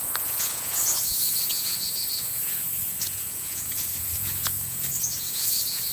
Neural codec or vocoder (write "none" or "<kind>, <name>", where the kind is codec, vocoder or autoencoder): vocoder, Vocos